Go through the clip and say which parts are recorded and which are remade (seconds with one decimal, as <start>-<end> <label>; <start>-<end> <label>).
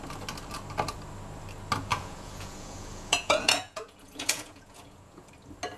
0.0-1.9 recorded; 1.9-5.3 remade; 5.3-5.8 recorded